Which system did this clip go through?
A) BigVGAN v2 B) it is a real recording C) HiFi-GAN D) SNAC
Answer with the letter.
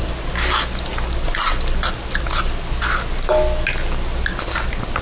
B